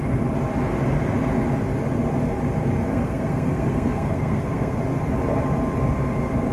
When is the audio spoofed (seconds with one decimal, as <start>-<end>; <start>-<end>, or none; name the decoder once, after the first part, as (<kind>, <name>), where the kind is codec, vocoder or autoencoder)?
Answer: 2.9-4.8 (codec, SNAC)